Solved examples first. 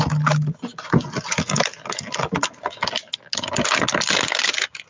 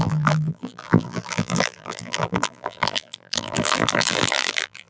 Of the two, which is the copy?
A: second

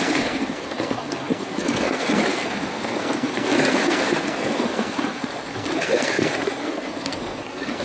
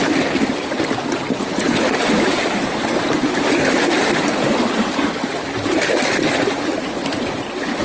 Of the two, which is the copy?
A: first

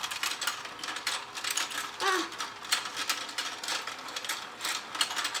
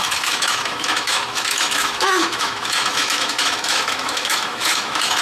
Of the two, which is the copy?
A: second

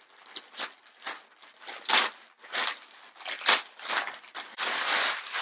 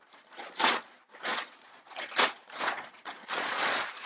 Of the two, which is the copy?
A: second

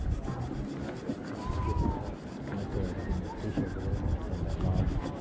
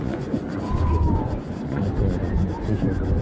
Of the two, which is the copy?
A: second